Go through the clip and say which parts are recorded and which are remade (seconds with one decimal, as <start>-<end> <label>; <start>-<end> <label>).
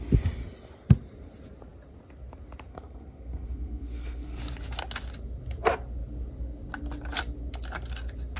0.0-2.7 recorded; 2.7-4.4 remade; 4.4-8.4 recorded